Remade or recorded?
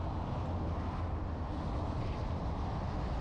recorded